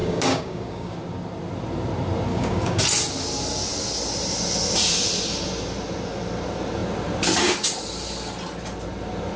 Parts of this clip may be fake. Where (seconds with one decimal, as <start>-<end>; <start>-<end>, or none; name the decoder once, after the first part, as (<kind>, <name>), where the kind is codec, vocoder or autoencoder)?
0.0-0.9 (codec, DAC); 2.3-2.8